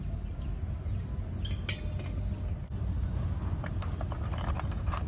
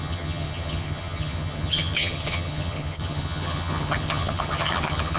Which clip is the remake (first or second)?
second